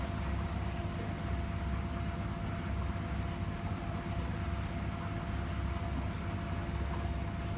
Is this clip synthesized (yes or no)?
no